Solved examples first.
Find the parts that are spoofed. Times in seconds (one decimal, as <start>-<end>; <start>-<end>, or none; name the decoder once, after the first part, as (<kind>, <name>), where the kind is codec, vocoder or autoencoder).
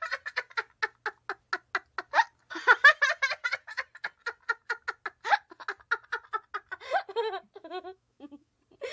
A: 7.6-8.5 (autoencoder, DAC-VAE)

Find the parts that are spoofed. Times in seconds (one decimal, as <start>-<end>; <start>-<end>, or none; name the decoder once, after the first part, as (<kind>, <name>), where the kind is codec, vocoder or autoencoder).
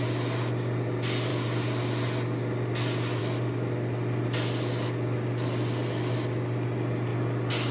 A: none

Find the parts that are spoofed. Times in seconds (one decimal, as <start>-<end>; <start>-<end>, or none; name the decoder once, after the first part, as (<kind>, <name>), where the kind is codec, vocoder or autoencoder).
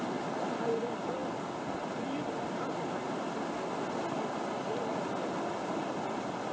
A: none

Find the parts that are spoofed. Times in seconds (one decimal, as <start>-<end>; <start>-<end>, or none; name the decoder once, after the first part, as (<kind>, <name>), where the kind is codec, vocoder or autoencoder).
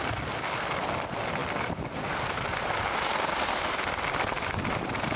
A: none